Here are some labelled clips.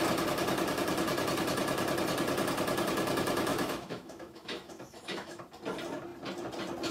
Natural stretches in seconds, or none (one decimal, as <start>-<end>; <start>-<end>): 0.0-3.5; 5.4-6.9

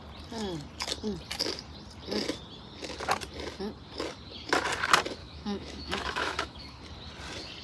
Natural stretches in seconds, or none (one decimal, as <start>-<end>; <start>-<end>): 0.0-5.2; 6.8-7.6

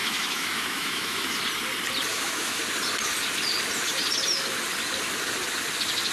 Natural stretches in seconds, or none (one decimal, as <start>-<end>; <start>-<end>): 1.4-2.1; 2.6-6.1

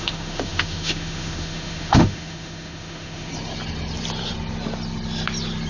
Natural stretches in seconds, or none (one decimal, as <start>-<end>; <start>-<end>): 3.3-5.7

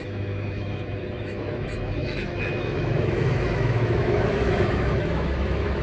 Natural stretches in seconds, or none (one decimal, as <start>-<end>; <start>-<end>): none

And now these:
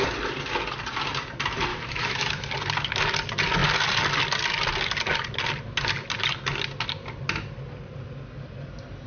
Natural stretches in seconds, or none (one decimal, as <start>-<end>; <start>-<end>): 0.0-1.7; 2.5-9.1